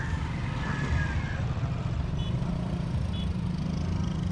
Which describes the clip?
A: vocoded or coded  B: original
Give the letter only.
A